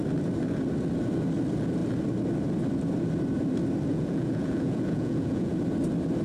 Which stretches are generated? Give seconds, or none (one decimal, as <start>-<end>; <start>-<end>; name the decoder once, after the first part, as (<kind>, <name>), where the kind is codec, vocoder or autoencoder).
3.9-5.5 (vocoder, Vocos)